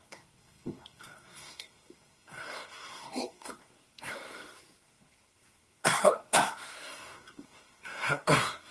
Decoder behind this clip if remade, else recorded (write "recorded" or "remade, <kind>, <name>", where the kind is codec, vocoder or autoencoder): remade, codec, SNAC